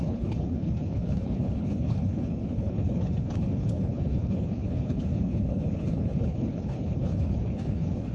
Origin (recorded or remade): remade